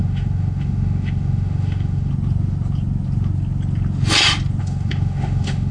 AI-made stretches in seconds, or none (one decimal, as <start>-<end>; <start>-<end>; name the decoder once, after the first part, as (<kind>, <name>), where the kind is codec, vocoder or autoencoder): 0.0-2.1 (autoencoder, DAC-VAE); 4.6-5.7